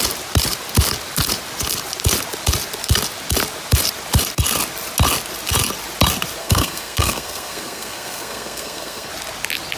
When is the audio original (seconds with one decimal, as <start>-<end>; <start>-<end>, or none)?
0.0-6.4; 9.1-9.8